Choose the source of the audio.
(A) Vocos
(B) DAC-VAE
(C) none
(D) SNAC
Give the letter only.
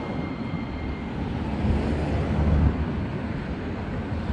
C